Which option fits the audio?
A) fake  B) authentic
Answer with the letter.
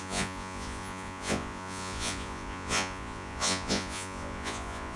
A